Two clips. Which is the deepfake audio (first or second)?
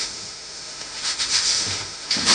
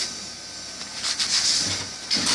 first